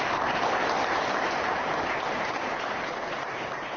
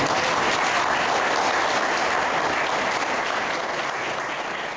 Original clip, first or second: second